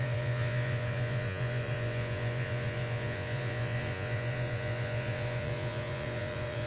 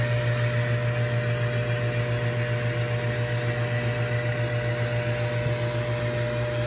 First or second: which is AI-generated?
first